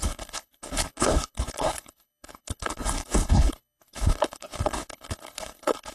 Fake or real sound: fake